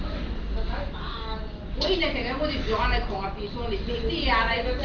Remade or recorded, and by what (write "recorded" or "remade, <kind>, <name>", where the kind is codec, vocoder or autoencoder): recorded